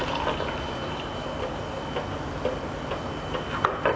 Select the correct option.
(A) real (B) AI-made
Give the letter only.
A